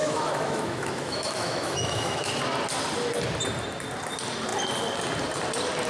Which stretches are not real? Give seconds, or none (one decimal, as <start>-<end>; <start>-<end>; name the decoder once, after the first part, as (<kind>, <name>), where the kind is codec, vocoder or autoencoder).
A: 0.0-2.4 (autoencoder, DAC-VAE)